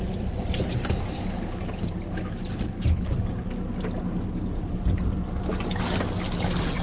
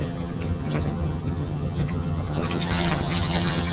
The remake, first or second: second